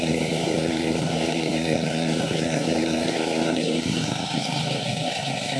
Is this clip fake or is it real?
fake